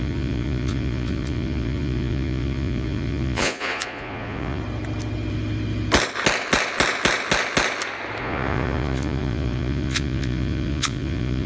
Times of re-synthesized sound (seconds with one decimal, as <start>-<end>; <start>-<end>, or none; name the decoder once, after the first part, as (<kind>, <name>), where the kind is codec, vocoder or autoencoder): 0.0-4.6 (vocoder, Vocos); 8.2-11.5